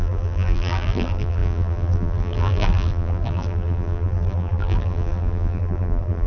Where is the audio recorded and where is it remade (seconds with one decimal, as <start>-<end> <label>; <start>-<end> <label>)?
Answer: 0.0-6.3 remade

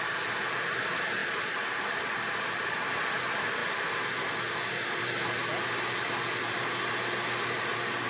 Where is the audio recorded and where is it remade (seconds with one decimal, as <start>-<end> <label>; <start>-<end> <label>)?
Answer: 0.0-3.6 remade; 3.6-4.6 recorded; 4.6-5.4 remade; 5.4-8.1 recorded

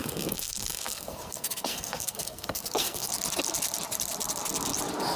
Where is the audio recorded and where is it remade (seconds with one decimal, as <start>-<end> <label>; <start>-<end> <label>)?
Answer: 0.0-3.1 remade; 3.1-5.2 recorded